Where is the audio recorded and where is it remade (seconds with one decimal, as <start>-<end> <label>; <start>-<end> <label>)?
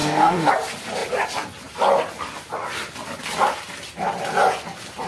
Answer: 0.0-0.5 remade; 0.5-5.1 recorded